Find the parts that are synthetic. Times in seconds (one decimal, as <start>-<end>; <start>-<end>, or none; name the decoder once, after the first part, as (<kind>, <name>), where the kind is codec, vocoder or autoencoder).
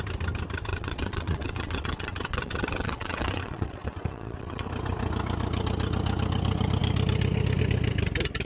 0.7-4.7 (vocoder, WaveNeXt)